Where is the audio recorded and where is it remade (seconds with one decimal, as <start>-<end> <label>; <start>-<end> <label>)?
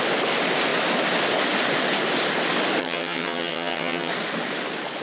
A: 0.0-2.8 recorded; 2.8-4.1 remade; 4.1-5.0 recorded